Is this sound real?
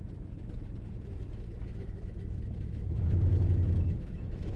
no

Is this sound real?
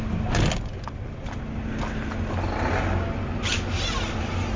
yes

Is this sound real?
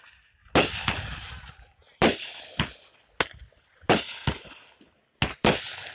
yes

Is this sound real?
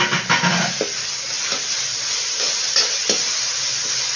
yes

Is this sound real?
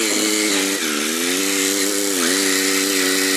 yes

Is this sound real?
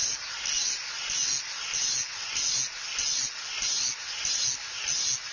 yes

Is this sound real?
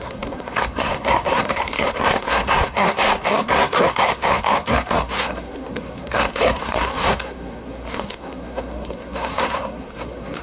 no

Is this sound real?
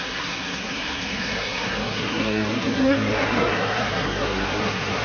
no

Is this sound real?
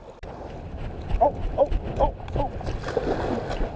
yes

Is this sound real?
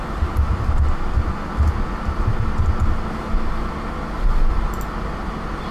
yes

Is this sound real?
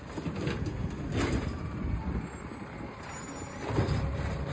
yes